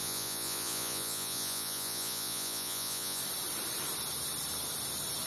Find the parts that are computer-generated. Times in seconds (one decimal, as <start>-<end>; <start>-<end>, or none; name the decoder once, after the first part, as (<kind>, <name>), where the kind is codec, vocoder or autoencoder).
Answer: 0.0-3.2 (vocoder, Vocos)